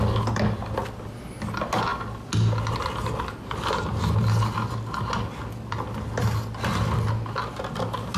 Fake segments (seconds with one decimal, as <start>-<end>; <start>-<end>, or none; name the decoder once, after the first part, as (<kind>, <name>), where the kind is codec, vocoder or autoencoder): none